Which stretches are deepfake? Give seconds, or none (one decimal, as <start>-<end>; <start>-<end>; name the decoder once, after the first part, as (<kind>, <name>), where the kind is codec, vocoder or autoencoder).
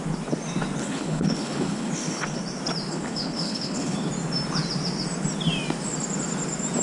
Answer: 0.8-2.4 (codec, HILCodec); 2.9-4.1